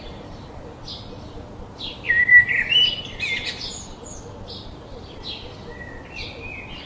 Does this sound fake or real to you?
real